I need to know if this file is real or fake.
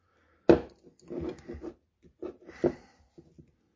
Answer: real